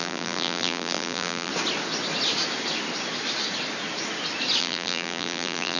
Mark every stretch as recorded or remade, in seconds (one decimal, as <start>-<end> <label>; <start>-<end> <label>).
0.0-1.5 remade; 1.5-4.6 recorded; 4.6-5.8 remade

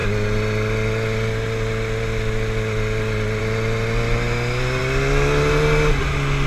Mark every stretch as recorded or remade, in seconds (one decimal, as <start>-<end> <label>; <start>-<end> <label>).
0.0-6.5 recorded

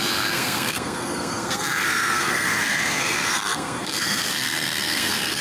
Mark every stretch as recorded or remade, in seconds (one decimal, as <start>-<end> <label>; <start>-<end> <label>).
0.0-5.4 remade

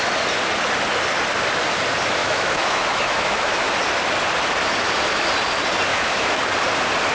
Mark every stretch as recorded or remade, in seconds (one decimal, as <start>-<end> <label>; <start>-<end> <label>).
0.0-2.2 recorded; 2.2-3.7 remade; 3.7-5.9 recorded; 5.9-6.4 remade; 6.4-7.1 recorded